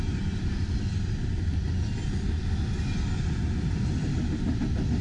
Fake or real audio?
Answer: real